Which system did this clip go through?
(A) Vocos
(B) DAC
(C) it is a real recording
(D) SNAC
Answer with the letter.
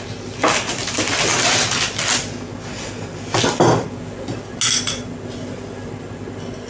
C